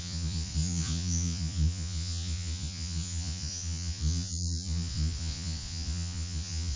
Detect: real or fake fake